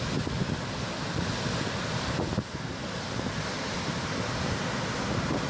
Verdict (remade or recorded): recorded